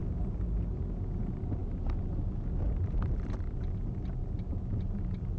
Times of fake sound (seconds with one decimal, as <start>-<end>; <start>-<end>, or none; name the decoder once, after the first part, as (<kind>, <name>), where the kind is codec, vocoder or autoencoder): none